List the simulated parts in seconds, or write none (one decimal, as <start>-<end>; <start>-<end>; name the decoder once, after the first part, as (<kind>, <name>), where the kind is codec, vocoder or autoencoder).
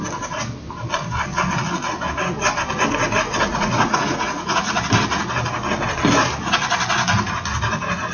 3.5-4.7 (vocoder, Vocos)